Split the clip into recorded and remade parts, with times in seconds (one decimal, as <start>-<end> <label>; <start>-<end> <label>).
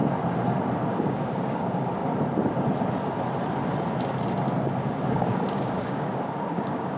0.0-0.9 recorded; 0.9-2.0 remade; 2.0-4.8 recorded; 4.8-7.0 remade